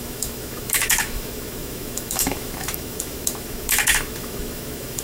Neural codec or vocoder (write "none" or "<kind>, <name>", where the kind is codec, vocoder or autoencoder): autoencoder, DAC-VAE